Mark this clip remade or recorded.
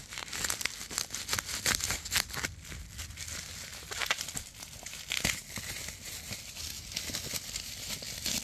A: recorded